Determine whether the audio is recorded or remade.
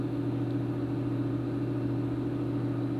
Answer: recorded